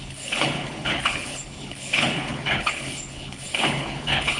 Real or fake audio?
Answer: fake